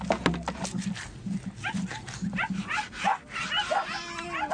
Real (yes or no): yes